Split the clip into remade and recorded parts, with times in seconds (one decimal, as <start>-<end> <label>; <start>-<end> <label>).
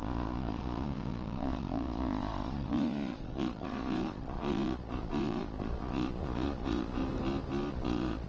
0.0-7.0 remade; 7.0-7.7 recorded; 7.7-8.3 remade